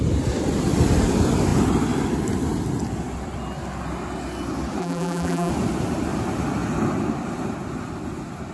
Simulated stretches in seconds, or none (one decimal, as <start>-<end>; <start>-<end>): 4.8-5.5